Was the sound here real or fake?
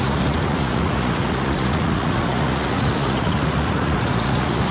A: fake